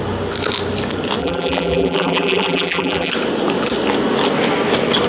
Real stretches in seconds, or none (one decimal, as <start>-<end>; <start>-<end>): 0.0-1.2; 3.1-5.1